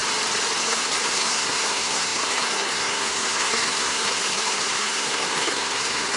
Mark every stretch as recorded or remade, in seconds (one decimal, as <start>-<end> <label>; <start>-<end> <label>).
0.0-0.6 recorded; 0.6-6.2 remade